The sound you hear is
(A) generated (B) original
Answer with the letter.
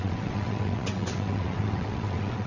A